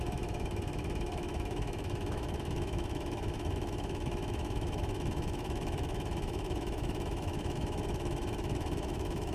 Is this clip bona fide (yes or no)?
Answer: no